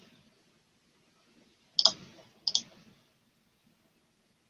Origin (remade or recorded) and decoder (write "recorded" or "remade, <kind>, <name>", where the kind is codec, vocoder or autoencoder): recorded